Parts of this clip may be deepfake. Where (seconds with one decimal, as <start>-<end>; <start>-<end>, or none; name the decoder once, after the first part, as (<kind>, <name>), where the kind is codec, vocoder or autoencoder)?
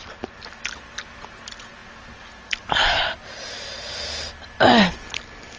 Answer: none